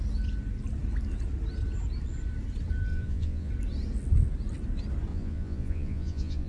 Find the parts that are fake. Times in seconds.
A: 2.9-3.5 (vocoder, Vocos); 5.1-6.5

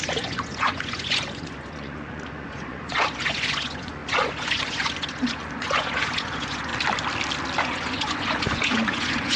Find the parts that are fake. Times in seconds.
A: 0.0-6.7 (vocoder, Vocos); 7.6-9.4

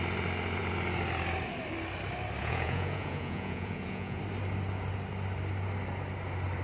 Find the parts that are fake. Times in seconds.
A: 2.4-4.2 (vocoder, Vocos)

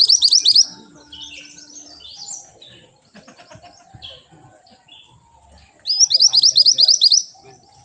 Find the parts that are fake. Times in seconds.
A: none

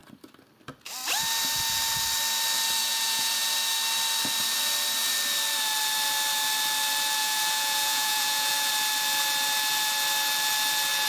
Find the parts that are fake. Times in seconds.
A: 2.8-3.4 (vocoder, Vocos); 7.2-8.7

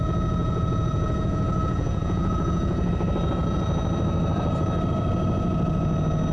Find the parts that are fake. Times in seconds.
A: 0.4-2.9 (vocoder, Vocos)